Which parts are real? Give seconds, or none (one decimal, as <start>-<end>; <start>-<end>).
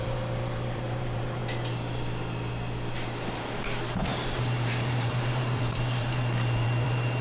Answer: 1.4-4.1